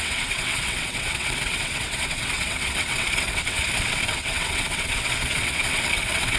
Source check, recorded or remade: remade